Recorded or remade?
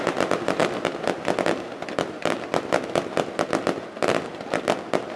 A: recorded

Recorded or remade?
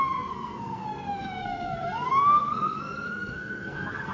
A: remade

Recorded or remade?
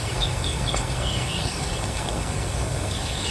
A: remade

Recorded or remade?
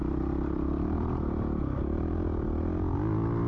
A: recorded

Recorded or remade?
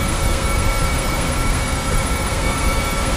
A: remade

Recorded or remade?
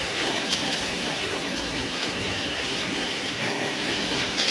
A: remade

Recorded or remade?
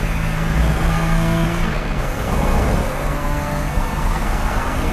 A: remade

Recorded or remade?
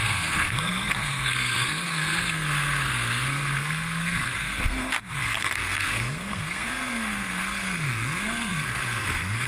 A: remade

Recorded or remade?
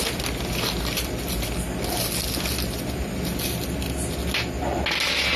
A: recorded